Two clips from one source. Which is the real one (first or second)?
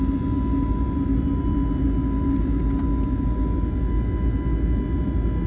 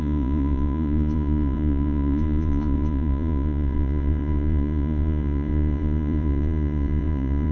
first